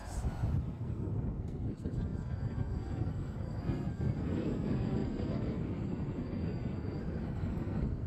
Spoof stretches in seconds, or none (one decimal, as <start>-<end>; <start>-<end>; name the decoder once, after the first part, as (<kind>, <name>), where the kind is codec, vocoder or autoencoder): 0.6-8.1 (codec, SNAC)